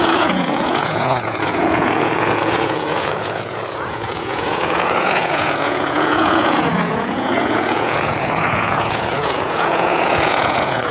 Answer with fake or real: fake